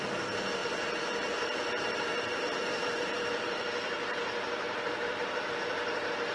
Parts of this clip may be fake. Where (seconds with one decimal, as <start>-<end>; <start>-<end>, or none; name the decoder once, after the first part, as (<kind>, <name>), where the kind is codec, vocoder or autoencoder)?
0.0-6.3 (vocoder, BigVGAN v2)